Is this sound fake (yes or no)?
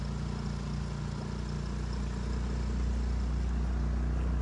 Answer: no